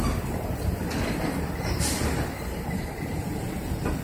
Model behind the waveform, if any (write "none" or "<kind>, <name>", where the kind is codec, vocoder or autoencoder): none